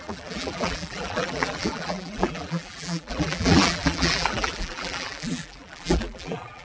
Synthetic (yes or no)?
yes